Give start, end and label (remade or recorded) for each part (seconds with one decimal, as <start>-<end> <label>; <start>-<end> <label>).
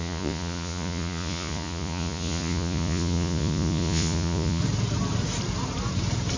0.0-4.6 remade; 4.6-6.4 recorded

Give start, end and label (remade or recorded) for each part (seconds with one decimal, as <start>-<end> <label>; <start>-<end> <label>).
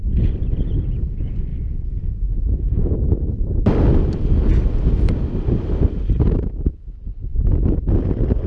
0.0-8.5 recorded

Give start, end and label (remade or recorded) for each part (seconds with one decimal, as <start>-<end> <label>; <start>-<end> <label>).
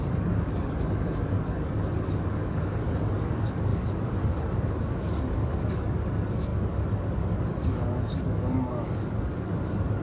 0.0-10.0 remade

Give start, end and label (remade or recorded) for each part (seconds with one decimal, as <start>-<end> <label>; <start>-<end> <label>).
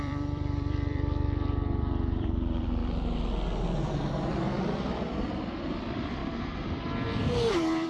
0.0-2.8 remade; 2.8-3.8 recorded; 3.8-6.2 remade; 6.2-7.5 recorded; 7.5-7.9 remade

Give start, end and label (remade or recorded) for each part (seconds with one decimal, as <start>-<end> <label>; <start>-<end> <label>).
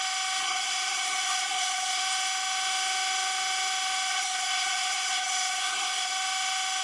0.0-0.4 recorded; 0.4-2.0 remade; 2.0-4.1 recorded; 4.1-6.1 remade; 6.1-6.8 recorded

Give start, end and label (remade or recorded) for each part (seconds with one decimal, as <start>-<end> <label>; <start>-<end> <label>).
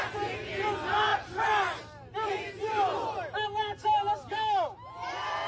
0.0-1.1 recorded; 1.1-2.3 remade; 2.3-5.5 recorded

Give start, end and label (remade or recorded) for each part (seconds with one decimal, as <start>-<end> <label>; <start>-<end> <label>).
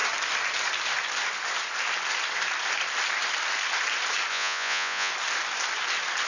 0.0-4.3 recorded; 4.3-5.1 remade; 5.1-6.3 recorded